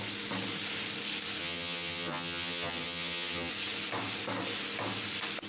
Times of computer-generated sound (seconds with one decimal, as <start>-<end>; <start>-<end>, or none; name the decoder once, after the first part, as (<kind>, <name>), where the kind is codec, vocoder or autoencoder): 1.4-3.5 (vocoder, HiFi-GAN)